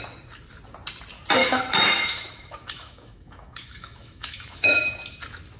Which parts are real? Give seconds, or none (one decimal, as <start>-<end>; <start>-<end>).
0.0-1.4; 4.8-5.6